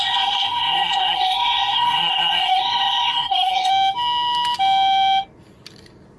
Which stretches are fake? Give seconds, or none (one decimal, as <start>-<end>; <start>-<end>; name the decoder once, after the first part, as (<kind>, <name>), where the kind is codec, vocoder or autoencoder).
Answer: 0.0-3.7 (codec, SNAC)